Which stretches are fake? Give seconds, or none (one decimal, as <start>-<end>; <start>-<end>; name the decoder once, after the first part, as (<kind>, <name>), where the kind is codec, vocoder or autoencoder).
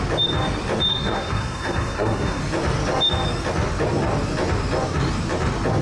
0.9-2.4 (codec, SNAC)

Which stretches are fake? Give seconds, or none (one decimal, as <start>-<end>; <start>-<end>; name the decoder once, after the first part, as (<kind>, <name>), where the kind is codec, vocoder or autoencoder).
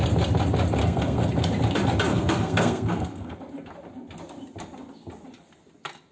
0.8-1.3 (codec, SNAC); 2.1-3.4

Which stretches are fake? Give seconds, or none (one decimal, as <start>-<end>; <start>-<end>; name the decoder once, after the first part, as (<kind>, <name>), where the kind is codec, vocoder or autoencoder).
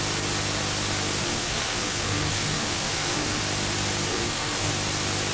1.2-3.4 (codec, SNAC); 4.1-4.7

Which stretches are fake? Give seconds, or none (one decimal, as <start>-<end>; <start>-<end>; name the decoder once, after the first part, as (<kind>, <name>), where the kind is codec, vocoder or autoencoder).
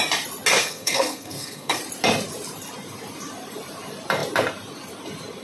0.6-1.8 (codec, SNAC)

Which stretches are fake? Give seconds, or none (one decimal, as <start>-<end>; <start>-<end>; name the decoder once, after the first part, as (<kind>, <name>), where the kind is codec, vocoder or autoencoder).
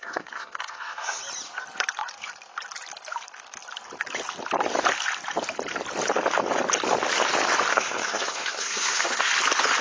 0.0-1.2 (codec, SNAC); 7.7-9.3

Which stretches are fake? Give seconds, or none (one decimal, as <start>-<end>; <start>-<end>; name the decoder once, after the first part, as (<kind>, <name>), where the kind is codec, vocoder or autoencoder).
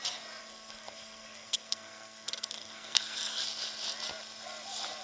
0.4-3.4 (codec, SNAC)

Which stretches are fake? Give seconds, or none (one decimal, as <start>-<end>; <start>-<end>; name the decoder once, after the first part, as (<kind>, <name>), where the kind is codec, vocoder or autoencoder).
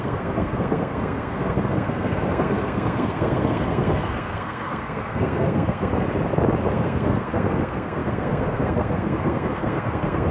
0.0-5.9 (codec, SNAC); 6.7-10.3